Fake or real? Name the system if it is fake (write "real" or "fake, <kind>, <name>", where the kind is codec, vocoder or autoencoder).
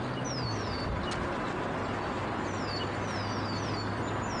real